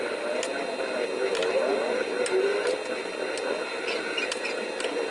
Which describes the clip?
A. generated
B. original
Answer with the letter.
B